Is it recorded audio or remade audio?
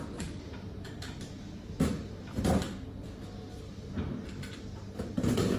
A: recorded